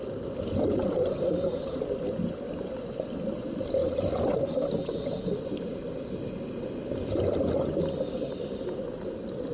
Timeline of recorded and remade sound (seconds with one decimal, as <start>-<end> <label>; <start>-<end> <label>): 0.0-9.5 recorded